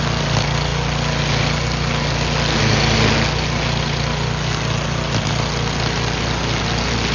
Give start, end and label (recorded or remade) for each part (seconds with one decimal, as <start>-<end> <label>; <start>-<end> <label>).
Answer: 0.0-7.1 recorded